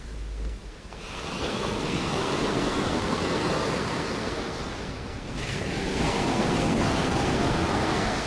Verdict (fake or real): fake